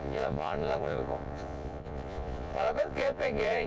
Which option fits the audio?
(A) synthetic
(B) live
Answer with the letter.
A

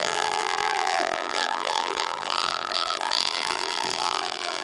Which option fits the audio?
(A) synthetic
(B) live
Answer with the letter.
A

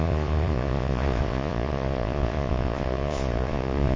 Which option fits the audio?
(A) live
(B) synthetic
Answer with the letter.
B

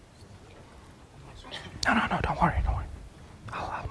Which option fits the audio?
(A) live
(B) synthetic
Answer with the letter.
A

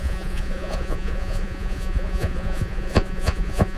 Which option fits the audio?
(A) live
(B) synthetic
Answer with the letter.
B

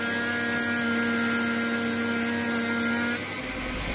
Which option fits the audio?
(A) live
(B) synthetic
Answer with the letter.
A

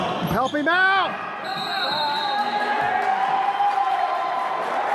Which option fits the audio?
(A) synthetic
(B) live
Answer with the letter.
B